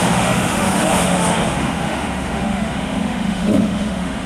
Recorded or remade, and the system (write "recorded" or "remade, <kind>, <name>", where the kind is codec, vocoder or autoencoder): remade, autoencoder, DAC-VAE